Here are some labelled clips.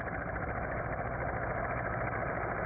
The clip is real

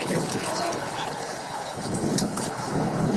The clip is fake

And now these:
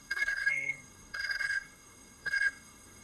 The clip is fake